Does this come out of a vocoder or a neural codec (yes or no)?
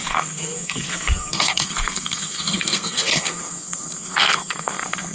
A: yes